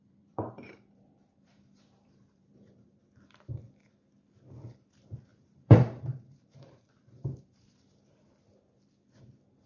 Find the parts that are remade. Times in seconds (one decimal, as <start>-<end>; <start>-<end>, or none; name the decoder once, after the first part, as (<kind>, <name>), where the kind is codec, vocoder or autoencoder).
0.0-3.0 (vocoder, BigVGAN v2); 5.3-8.0